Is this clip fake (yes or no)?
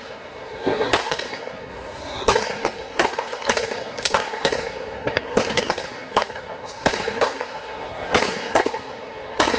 yes